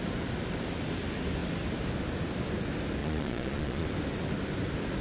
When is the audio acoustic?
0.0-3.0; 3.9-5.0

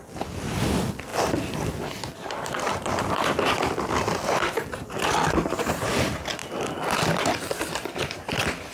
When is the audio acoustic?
6.4-7.0

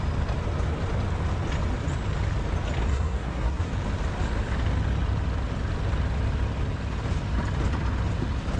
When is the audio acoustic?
0.0-2.9; 3.7-8.6

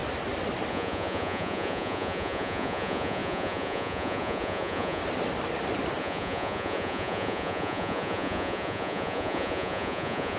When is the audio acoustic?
0.0-0.7; 5.0-6.0

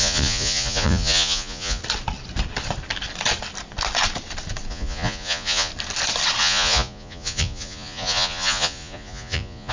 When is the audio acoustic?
1.8-4.7; 5.7-6.4

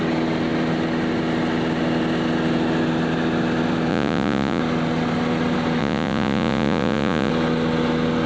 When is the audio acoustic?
0.0-3.9; 4.6-5.8; 7.3-8.3